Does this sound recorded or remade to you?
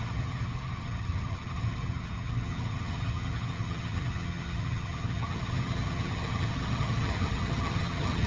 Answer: remade